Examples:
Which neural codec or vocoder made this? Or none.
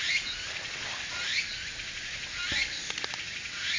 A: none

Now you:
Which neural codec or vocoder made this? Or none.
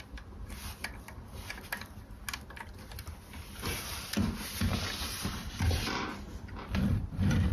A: none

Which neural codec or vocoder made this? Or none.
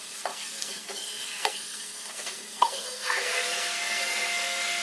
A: codec, SNAC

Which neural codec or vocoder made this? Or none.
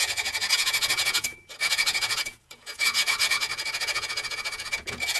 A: vocoder, Vocos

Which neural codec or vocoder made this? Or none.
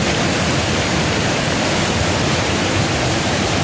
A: vocoder, BigVGAN v2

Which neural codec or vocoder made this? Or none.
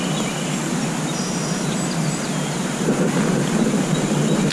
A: none